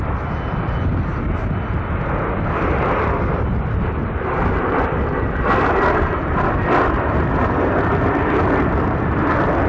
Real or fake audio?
real